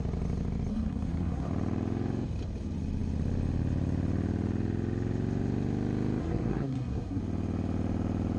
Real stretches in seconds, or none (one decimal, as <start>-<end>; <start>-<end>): 0.0-0.7; 1.5-6.2; 7.2-8.4